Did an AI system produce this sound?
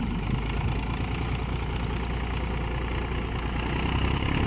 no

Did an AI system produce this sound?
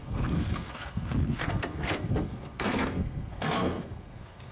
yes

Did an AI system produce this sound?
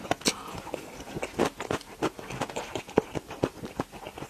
no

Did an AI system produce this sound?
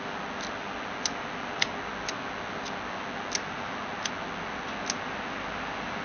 no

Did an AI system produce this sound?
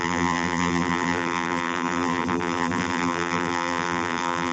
yes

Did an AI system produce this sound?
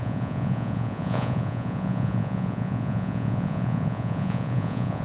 yes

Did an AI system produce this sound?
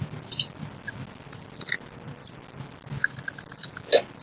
no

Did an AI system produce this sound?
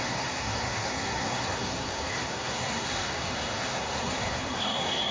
yes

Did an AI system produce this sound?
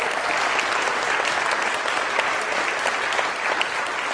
no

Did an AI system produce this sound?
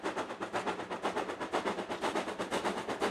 no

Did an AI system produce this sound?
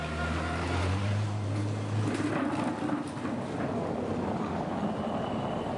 no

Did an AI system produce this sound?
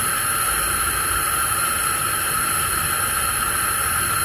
no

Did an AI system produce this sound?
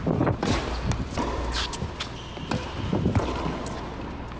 no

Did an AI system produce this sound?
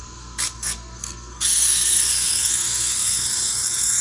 yes